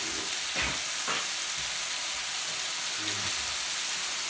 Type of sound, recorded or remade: recorded